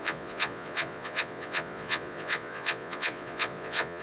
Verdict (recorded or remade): remade